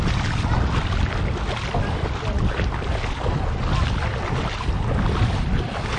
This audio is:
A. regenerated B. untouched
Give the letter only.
B